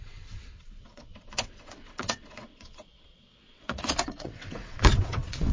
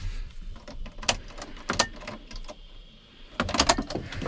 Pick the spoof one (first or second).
first